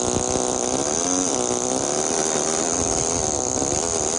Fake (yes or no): no